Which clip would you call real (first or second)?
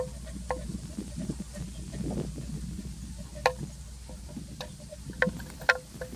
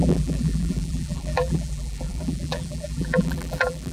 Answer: first